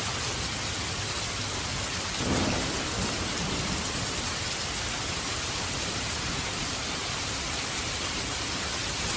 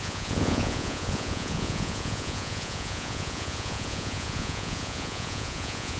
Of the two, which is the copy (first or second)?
second